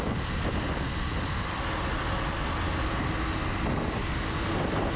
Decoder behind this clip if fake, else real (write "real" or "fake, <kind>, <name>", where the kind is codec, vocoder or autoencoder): real